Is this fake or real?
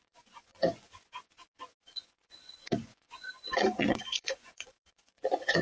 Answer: fake